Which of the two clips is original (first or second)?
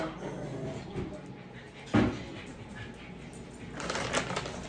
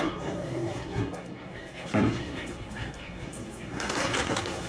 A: first